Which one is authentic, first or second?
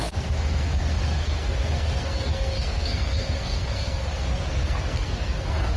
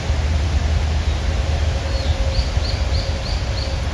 second